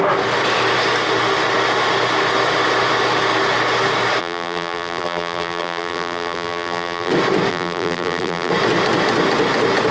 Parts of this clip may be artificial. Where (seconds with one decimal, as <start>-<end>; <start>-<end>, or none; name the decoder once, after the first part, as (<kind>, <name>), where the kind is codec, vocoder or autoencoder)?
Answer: 4.2-7.1 (vocoder, BigVGAN v2); 7.5-8.5

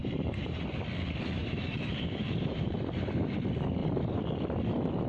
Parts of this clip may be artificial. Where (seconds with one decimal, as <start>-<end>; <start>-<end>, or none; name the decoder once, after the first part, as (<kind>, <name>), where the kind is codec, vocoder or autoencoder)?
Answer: 0.0-0.7 (vocoder, BigVGAN v2); 1.4-2.8

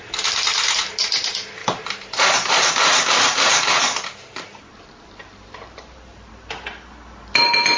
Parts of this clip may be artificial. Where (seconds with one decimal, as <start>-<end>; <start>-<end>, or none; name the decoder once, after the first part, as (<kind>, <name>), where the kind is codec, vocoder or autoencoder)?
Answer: 1.6-6.3 (vocoder, BigVGAN v2)

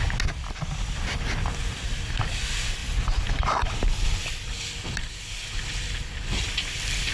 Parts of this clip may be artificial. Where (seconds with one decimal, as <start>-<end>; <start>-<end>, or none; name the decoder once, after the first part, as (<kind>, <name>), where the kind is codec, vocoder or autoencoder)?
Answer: 2.8-5.1 (vocoder, BigVGAN v2)

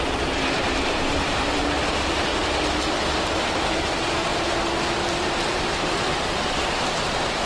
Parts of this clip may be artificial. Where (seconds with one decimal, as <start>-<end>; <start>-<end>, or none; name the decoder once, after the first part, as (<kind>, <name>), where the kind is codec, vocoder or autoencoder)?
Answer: 0.0-2.3 (vocoder, BigVGAN v2); 3.8-4.3; 5.2-7.5

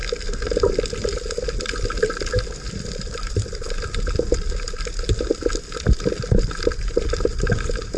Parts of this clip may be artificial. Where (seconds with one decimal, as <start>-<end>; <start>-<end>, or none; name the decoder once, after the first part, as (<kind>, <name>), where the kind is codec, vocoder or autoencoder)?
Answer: none

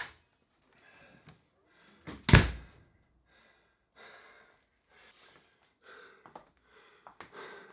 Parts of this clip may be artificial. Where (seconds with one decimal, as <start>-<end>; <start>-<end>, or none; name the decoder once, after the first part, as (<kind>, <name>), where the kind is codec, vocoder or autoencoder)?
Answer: none